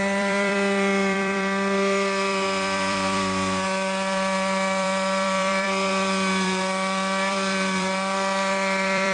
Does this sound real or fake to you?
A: fake